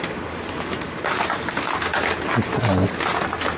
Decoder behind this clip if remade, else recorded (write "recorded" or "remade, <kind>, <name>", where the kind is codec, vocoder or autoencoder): recorded